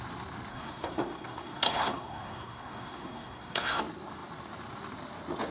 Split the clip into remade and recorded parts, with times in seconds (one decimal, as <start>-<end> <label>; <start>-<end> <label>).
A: 0.0-0.5 recorded; 0.5-3.8 remade; 3.8-5.5 recorded